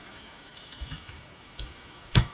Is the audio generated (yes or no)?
yes